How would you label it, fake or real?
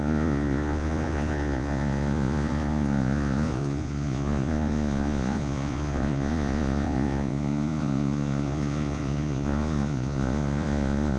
fake